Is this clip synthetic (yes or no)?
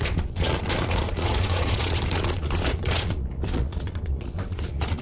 yes